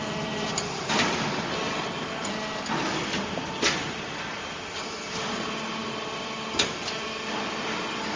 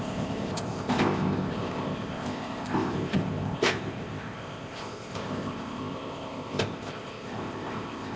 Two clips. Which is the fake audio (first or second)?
second